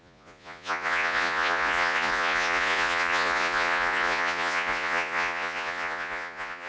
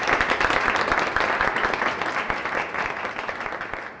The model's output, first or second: first